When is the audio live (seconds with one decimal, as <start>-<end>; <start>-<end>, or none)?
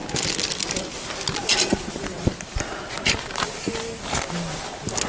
1.4-4.5